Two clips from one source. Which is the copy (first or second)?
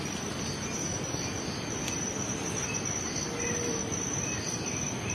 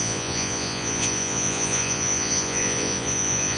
second